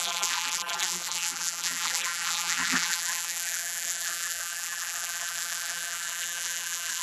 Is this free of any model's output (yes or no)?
no